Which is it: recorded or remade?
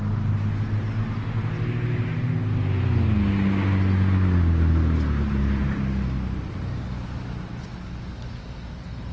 recorded